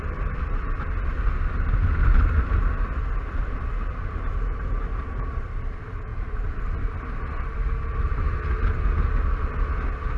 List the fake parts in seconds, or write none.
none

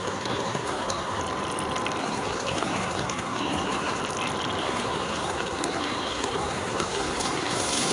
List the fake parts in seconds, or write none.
0.0-1.2 (codec, SNAC); 2.0-4.0; 4.6-7.9

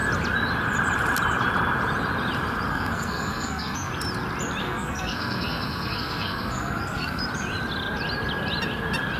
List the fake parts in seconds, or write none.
2.7-3.9 (codec, SNAC); 4.6-7.2

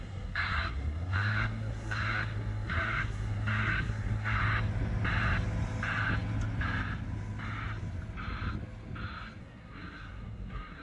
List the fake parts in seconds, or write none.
0.0-4.4 (codec, SNAC); 9.4-10.8

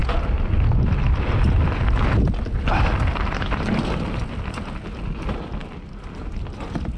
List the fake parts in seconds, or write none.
none

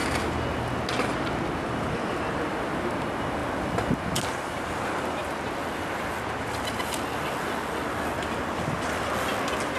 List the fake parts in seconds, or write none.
none

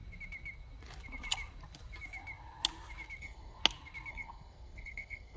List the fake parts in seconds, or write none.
3.2-3.6 (codec, SNAC); 4.1-5.4

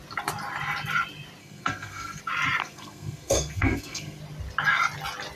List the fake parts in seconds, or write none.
1.4-2.2 (codec, SNAC); 2.6-4.2